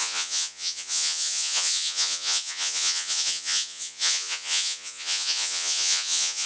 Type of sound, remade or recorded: remade